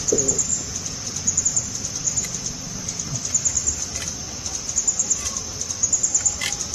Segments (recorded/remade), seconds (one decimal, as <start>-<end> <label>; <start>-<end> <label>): 0.0-0.5 recorded; 0.5-1.4 remade; 1.4-6.7 recorded